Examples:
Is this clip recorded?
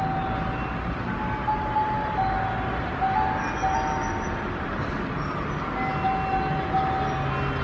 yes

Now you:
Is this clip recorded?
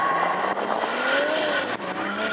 yes